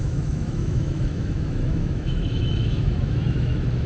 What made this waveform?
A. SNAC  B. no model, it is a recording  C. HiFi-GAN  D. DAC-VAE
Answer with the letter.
D